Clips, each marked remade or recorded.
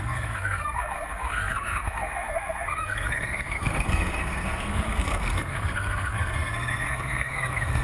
remade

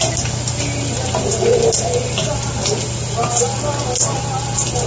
recorded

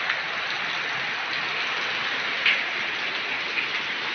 recorded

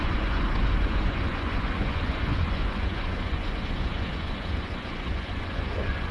remade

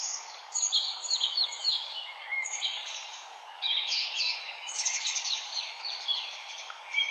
remade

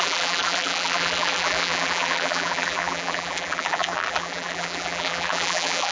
remade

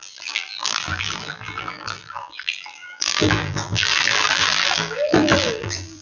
remade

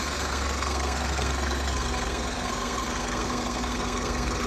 remade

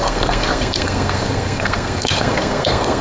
remade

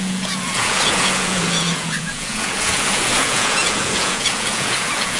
remade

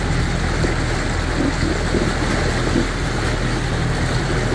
recorded